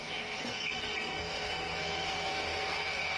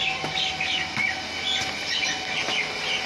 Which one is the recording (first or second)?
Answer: second